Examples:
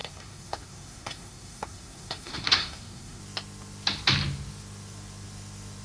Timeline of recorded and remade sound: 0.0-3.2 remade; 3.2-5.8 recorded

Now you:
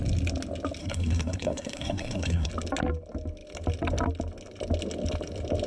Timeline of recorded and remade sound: 0.0-0.8 recorded; 0.8-2.5 remade; 2.5-5.7 recorded

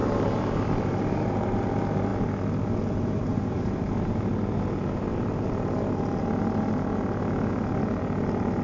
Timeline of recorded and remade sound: 0.0-1.7 remade; 1.7-3.3 recorded; 3.3-4.2 remade; 4.2-8.6 recorded

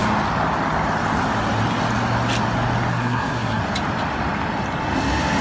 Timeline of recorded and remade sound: 0.0-2.9 recorded; 2.9-3.6 remade; 3.6-5.4 recorded